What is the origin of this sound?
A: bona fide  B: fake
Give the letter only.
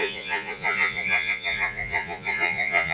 B